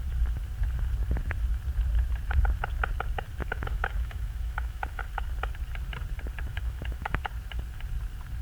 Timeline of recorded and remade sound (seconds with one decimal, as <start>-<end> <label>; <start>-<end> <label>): 0.0-3.4 recorded; 3.4-5.0 remade; 5.0-6.5 recorded; 6.5-7.2 remade; 7.2-8.4 recorded